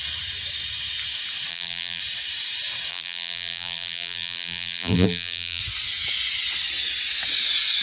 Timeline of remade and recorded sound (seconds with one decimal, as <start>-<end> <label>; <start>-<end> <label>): 0.0-1.5 recorded; 1.5-2.0 remade; 2.0-2.9 recorded; 2.9-5.6 remade; 5.6-7.8 recorded